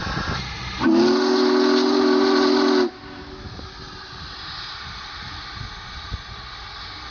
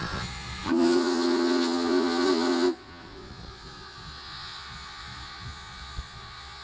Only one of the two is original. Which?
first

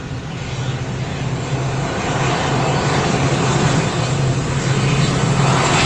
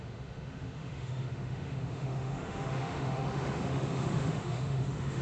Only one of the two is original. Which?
first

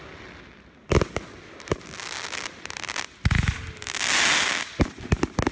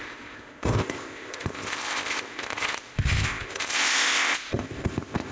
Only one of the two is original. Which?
first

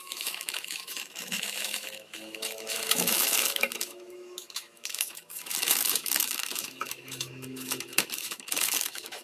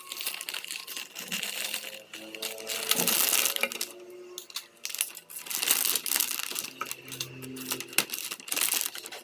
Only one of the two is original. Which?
second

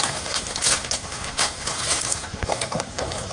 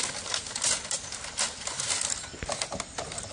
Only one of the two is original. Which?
second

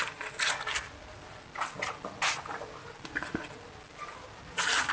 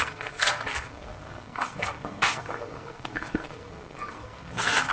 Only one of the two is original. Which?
first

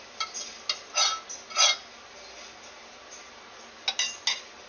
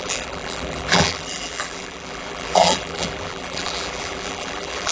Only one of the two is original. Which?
first